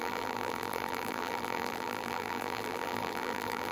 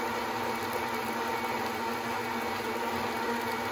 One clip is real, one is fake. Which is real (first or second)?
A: second